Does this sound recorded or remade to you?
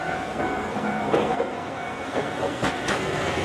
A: remade